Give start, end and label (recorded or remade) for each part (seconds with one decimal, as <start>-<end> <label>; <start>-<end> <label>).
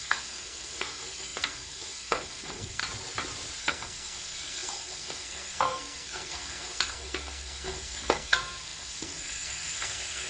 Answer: 0.0-2.8 remade; 2.8-3.6 recorded; 3.6-10.3 remade